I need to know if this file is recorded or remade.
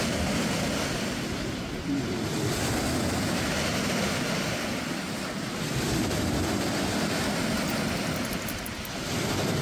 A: recorded